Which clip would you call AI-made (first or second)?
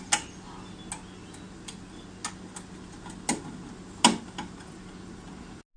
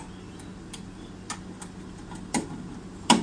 second